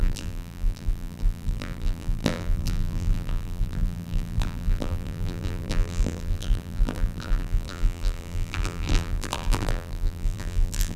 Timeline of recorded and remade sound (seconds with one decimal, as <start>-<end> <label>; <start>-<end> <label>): 0.0-11.0 remade